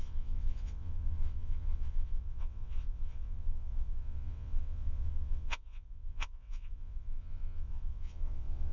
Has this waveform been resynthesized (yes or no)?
yes